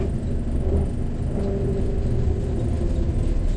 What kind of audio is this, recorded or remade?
recorded